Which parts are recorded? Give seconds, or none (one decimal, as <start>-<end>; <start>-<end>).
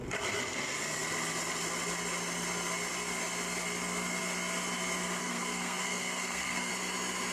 0.0-5.2; 6.7-7.3